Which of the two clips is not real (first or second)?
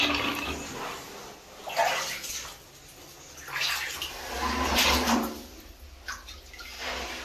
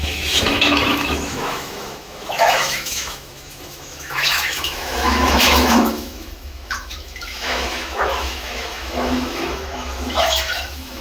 second